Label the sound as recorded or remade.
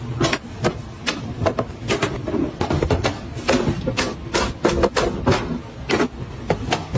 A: recorded